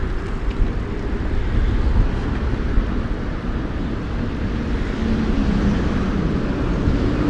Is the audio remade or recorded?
recorded